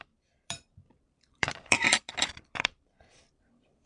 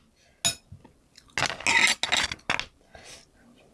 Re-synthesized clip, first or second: first